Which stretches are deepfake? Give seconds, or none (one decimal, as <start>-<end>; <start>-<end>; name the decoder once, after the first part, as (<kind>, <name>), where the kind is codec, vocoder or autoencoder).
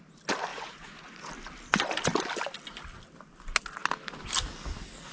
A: 0.5-1.3 (vocoder, Vocos)